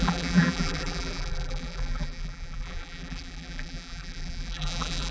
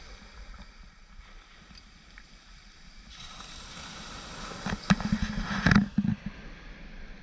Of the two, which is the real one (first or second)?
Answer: second